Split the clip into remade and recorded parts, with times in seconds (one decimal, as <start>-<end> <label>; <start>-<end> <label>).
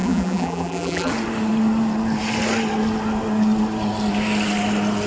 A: 0.0-1.1 remade; 1.1-5.1 recorded